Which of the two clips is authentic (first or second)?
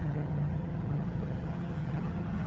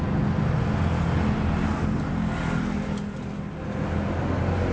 second